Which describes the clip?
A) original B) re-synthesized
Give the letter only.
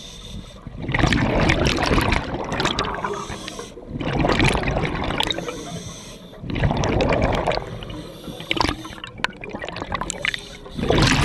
A